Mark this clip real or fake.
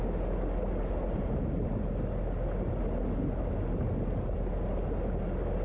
real